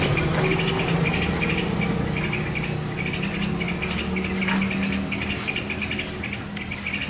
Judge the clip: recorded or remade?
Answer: recorded